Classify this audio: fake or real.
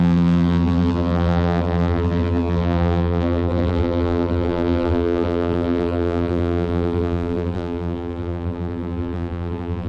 fake